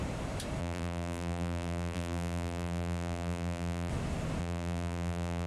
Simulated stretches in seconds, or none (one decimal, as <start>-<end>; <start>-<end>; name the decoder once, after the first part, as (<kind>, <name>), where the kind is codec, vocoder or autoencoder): 0.6-3.9 (vocoder, BigVGAN v2); 4.4-5.5